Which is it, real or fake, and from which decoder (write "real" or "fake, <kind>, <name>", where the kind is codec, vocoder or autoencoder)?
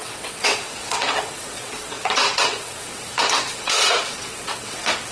fake, vocoder, WaveNeXt